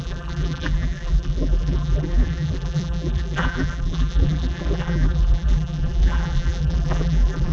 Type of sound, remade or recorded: remade